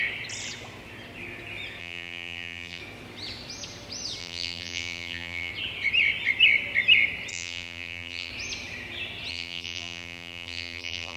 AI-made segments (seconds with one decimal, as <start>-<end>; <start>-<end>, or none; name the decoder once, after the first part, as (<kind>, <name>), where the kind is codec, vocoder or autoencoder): 1.8-2.8 (vocoder, BigVGAN v2); 4.2-5.5; 7.3-8.3; 9.3-11.2